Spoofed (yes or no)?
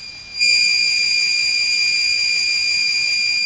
no